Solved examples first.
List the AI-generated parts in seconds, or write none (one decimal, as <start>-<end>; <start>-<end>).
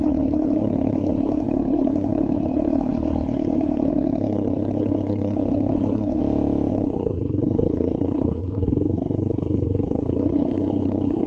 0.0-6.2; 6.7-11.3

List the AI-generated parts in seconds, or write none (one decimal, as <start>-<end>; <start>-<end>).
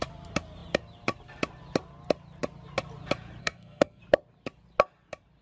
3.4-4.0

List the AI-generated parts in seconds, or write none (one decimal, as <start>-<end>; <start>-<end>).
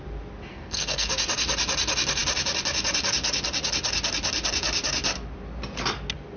0.5-1.1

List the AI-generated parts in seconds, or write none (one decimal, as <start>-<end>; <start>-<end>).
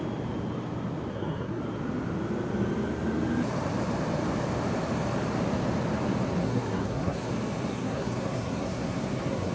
1.1-1.6; 6.4-7.3; 7.7-9.5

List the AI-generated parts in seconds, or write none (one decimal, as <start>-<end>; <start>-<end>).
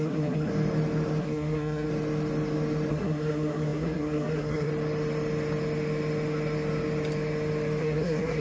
0.0-0.5; 1.2-1.9; 2.9-4.7; 7.8-8.4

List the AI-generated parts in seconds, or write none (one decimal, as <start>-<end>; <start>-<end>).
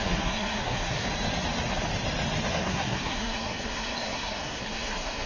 0.0-1.1; 2.5-5.3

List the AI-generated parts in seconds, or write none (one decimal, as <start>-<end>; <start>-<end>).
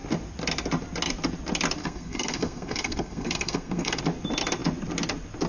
1.8-4.0